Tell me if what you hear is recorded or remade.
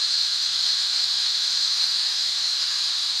remade